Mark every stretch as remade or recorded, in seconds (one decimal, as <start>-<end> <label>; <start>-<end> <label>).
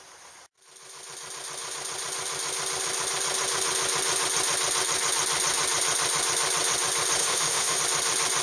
0.0-7.2 recorded; 7.2-7.8 remade; 7.8-8.4 recorded